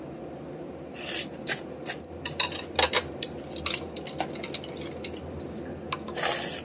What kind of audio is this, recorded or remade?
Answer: recorded